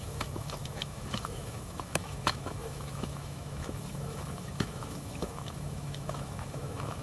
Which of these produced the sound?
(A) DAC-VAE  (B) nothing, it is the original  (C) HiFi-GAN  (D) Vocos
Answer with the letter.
A